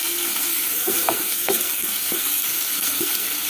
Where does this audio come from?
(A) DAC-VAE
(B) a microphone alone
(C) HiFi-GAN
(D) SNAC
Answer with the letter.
D